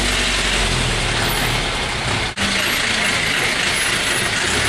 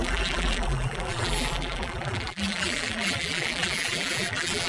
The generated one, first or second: second